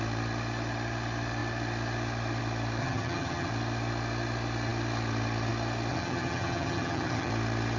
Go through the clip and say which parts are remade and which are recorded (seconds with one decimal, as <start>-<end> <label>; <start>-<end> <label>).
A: 0.0-2.8 recorded; 2.8-3.5 remade; 3.5-5.9 recorded; 5.9-7.3 remade; 7.3-7.8 recorded